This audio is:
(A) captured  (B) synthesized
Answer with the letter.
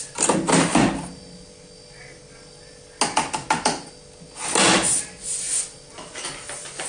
A